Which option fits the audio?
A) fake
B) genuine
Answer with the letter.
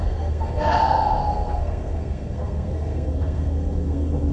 A